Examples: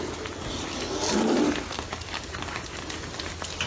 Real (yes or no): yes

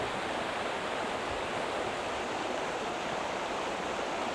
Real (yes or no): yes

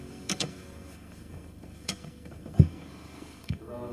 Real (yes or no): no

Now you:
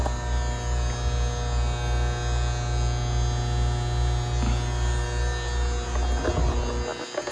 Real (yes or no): yes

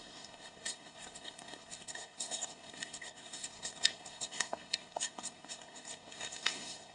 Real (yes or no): no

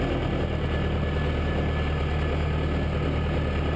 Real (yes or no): yes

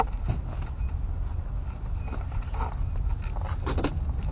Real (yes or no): yes